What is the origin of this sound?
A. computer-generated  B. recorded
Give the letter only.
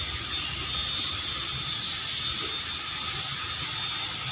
B